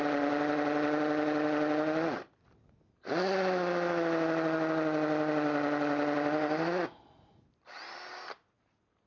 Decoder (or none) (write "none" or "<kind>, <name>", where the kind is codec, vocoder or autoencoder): none